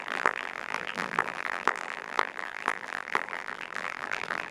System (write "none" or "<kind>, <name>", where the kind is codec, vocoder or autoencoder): vocoder, BigVGAN v2